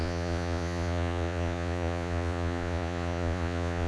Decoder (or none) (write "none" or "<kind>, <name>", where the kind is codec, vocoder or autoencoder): vocoder, Vocos